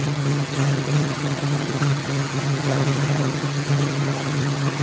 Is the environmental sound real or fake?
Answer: fake